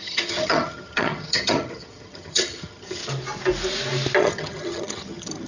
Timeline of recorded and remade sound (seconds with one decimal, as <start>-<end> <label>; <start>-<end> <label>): 0.0-3.0 remade; 3.0-4.2 recorded; 4.2-5.5 remade